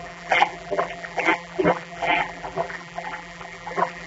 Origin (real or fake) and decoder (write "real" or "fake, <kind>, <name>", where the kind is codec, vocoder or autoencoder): fake, vocoder, BigVGAN v2